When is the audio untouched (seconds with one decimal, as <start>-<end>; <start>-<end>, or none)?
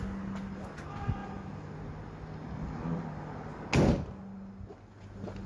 0.0-5.5